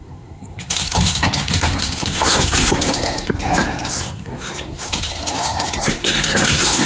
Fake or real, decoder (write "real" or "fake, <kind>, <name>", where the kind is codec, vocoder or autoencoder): fake, codec, SNAC